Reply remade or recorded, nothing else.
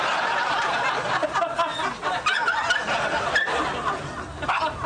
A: recorded